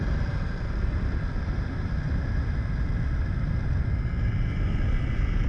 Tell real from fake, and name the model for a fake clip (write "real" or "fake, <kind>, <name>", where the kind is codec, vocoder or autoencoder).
real